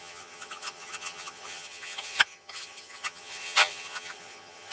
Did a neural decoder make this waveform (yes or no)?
yes